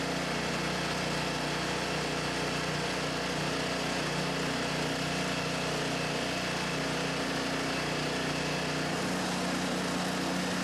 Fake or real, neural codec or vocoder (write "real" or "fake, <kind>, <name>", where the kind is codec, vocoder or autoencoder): real